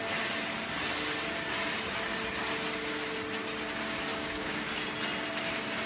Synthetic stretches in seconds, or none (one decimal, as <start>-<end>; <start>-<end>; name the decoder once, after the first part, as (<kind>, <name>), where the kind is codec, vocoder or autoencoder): 4.1-4.8 (codec, DAC)